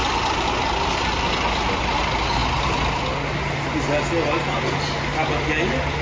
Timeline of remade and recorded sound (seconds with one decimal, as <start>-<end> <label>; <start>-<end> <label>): 0.0-6.0 recorded